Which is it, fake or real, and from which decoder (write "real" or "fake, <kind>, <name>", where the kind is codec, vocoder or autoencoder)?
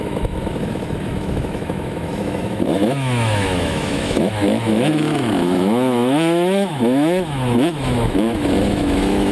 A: fake, autoencoder, DAC-VAE